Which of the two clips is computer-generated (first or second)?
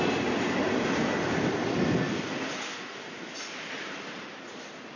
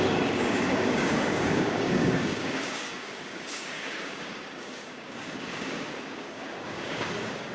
second